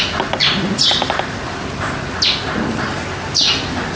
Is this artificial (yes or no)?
no